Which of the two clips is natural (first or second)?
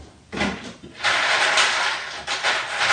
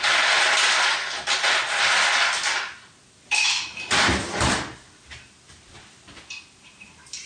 second